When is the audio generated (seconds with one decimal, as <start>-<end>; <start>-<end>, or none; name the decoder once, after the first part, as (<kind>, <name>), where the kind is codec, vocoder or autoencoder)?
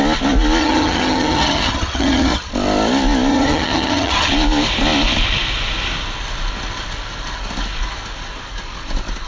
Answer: 0.6-2.5 (vocoder, HiFi-GAN); 3.3-4.3